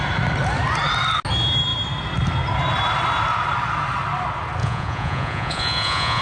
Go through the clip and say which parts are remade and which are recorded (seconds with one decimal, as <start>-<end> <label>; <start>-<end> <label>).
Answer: 0.0-4.6 recorded; 4.6-6.2 remade